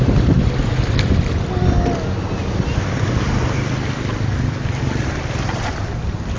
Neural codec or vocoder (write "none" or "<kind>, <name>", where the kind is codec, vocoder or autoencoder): none